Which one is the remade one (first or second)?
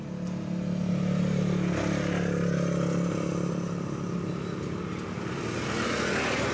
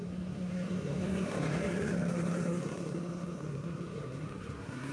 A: second